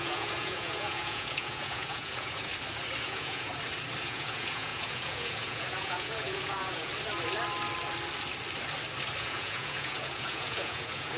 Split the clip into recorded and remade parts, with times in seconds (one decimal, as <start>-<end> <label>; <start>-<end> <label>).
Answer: 0.0-2.5 remade; 2.5-3.0 recorded; 3.0-3.5 remade; 3.5-4.0 recorded; 4.0-6.9 remade; 6.9-9.2 recorded; 9.2-11.2 remade